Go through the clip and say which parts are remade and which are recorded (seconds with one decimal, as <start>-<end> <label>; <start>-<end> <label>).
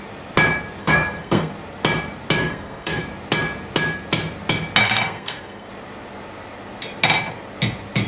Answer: 0.0-0.8 recorded; 0.8-1.5 remade; 1.5-2.4 recorded; 2.4-3.0 remade; 3.0-4.8 recorded; 4.8-5.7 remade; 5.7-8.1 recorded